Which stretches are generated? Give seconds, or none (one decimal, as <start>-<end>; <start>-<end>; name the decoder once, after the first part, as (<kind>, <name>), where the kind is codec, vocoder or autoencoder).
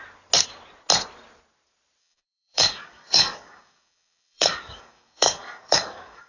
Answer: 2.0-6.3 (codec, DAC)